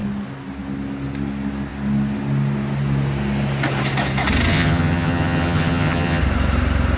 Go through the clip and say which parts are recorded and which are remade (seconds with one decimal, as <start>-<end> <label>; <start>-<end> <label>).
0.0-4.5 recorded; 4.5-6.2 remade; 6.2-7.0 recorded